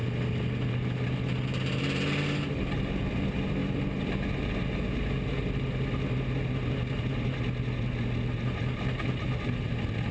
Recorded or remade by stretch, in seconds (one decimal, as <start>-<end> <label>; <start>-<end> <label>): 0.0-10.1 recorded